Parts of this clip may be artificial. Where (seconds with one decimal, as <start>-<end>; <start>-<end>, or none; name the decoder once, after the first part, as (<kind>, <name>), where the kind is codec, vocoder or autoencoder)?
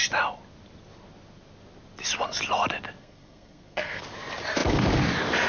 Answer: 3.0-4.0 (codec, SNAC)